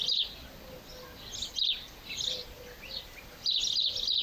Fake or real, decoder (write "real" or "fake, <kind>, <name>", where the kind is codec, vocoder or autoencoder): real